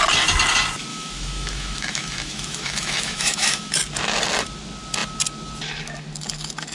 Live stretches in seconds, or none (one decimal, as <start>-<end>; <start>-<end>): 0.0-0.9; 3.7-6.7